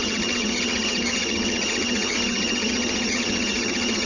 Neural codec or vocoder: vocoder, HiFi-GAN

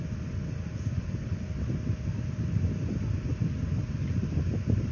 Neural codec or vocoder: none